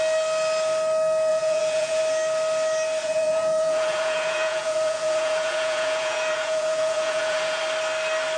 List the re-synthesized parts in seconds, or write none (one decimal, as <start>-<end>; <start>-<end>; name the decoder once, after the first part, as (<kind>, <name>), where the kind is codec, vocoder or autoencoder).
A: 1.3-2.0 (vocoder, Vocos); 3.0-7.6